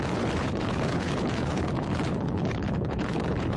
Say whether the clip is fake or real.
fake